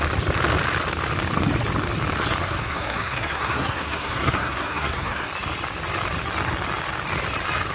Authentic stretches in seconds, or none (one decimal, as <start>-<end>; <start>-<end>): 0.0-2.4; 5.3-7.7